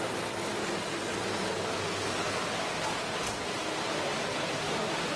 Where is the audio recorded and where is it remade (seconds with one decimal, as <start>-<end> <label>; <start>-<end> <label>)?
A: 0.0-4.1 recorded; 4.1-5.2 remade